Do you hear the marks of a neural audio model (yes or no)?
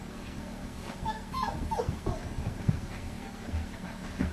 yes